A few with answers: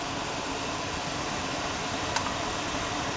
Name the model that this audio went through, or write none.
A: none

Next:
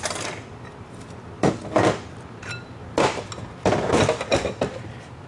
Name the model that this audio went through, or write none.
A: none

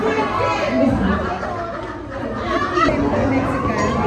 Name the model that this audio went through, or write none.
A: none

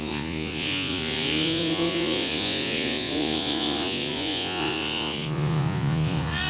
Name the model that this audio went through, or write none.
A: vocoder, Vocos